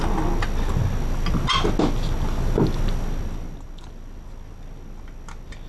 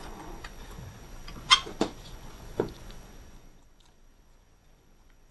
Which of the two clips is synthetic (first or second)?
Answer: second